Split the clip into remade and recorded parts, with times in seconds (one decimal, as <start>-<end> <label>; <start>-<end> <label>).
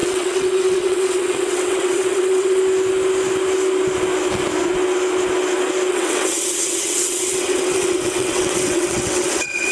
0.0-2.6 remade; 2.6-5.9 recorded; 5.9-9.7 remade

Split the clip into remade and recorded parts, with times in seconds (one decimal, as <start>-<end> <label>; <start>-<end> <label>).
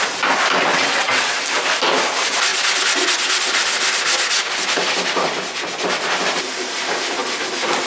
0.0-0.7 recorded; 0.7-1.3 remade; 1.3-7.9 recorded